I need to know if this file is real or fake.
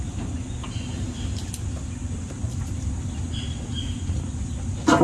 real